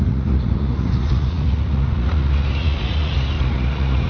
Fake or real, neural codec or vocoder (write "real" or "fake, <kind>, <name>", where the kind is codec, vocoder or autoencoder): fake, vocoder, Vocos